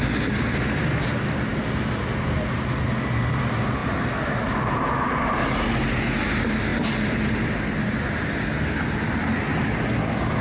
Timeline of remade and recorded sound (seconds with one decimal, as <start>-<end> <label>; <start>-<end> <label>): 0.0-10.4 recorded